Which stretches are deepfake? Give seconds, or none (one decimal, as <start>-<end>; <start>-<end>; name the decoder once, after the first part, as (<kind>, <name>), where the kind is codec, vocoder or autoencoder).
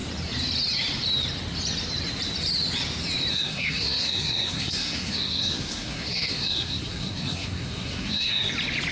3.3-8.5 (codec, SNAC)